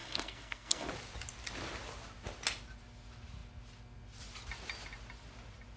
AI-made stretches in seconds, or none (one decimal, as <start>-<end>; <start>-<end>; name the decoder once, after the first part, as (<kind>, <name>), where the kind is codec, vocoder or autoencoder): 0.0-0.9 (codec, SNAC)